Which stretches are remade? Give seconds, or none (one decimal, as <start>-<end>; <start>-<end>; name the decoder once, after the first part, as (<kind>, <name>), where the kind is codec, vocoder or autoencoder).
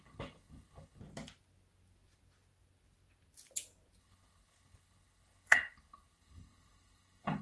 0.0-1.0 (codec, HILCodec); 4.0-7.4